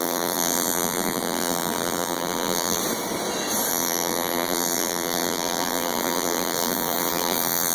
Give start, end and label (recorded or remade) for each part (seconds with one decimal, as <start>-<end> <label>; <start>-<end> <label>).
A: 0.0-2.8 remade; 2.8-3.7 recorded; 3.7-7.7 remade